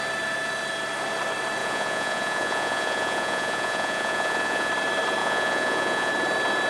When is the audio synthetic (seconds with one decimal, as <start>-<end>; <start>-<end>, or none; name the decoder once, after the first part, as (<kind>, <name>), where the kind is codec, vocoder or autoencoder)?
1.6-4.7 (vocoder, Vocos); 5.2-6.1